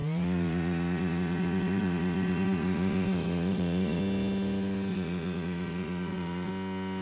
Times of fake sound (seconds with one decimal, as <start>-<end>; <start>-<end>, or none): 0.0-4.0; 4.9-6.5